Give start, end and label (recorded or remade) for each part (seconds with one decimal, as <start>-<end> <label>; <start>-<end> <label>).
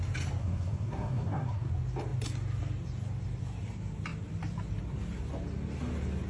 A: 0.0-0.4 recorded; 0.4-1.7 remade; 1.7-6.3 recorded